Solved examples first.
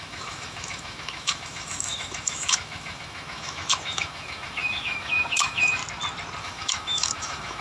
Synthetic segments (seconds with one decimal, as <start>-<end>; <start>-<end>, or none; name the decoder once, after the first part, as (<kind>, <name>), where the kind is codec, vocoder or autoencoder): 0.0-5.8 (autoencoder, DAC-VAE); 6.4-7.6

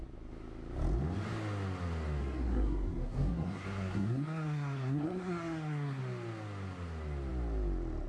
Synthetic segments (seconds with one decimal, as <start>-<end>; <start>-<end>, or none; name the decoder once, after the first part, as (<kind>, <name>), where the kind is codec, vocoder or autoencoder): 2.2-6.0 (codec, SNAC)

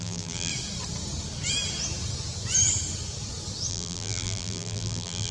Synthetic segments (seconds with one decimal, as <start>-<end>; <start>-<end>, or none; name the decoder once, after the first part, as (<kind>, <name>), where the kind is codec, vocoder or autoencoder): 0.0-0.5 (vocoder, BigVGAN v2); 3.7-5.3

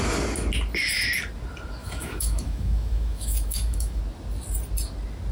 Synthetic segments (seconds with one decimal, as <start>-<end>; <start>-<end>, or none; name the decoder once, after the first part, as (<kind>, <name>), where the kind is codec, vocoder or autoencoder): 1.8-4.0 (autoencoder, DAC-VAE)